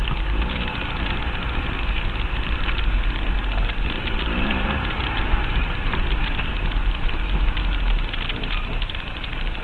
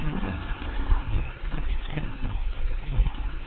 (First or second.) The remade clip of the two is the second